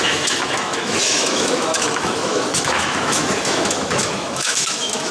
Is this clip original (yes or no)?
no